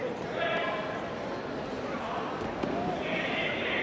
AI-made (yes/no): no